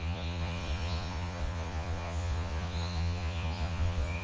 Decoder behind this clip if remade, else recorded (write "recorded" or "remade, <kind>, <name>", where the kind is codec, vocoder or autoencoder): remade, vocoder, Vocos